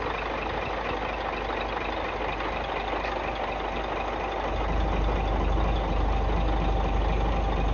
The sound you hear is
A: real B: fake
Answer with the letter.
A